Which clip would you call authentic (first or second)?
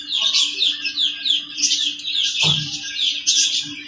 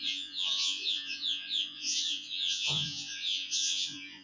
first